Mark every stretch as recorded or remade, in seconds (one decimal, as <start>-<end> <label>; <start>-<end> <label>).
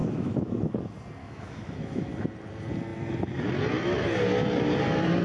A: 0.0-0.7 remade; 0.7-1.2 recorded; 1.2-2.1 remade; 2.1-5.2 recorded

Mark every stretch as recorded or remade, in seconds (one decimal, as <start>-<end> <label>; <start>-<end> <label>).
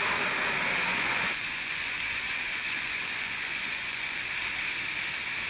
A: 0.0-0.9 recorded; 0.9-4.2 remade; 4.2-5.5 recorded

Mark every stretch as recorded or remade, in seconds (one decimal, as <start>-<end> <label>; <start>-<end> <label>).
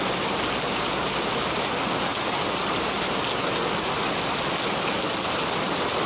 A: 0.0-6.1 recorded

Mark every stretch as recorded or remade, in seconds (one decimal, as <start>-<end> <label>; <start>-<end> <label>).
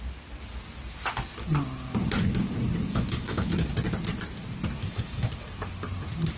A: 0.0-2.9 recorded; 2.9-3.7 remade; 3.7-4.8 recorded; 4.8-5.3 remade; 5.3-6.4 recorded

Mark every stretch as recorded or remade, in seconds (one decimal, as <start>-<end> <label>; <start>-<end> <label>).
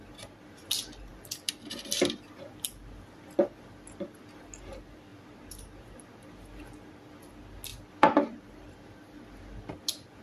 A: 0.0-1.1 recorded; 1.1-4.2 remade; 4.2-7.7 recorded; 7.7-9.7 remade; 9.7-10.2 recorded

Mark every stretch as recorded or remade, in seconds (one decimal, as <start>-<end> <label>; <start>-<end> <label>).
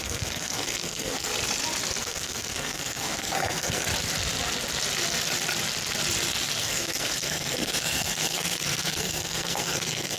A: 0.0-1.3 remade; 1.3-2.0 recorded; 2.0-3.9 remade; 3.9-6.6 recorded; 6.6-10.2 remade